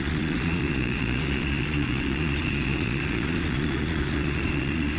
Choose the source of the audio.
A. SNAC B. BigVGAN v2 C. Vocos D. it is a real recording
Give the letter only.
C